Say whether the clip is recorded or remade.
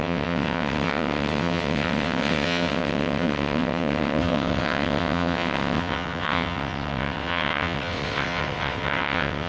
remade